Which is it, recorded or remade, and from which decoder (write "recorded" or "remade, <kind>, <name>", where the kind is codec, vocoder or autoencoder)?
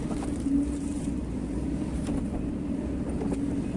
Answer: remade, vocoder, BigVGAN v2